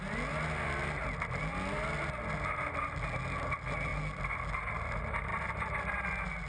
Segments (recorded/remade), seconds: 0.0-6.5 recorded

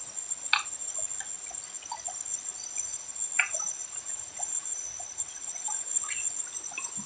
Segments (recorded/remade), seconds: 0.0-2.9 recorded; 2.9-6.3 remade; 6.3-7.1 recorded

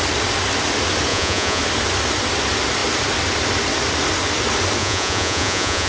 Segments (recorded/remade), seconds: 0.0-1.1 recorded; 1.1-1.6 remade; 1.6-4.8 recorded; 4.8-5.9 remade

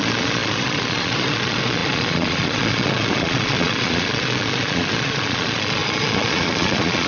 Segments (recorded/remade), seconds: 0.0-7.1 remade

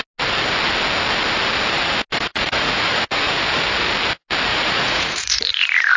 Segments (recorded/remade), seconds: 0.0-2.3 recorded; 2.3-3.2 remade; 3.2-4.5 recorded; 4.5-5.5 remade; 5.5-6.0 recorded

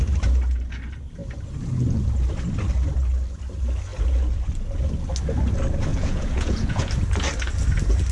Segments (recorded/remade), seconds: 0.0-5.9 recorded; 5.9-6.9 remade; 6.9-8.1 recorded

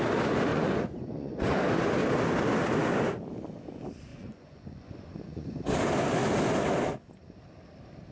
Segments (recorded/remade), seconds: 0.0-0.5 recorded; 0.5-1.6 remade; 1.6-4.1 recorded; 4.1-5.6 remade; 5.6-8.1 recorded

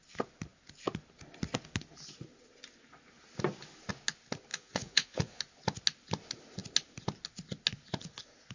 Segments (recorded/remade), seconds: 0.0-4.5 recorded; 4.5-5.4 remade; 5.4-8.5 recorded